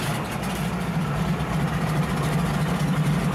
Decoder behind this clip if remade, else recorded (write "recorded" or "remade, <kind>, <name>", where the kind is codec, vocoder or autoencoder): recorded